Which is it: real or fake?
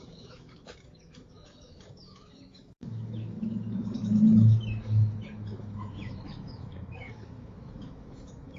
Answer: fake